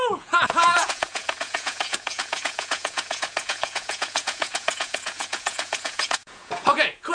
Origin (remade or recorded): remade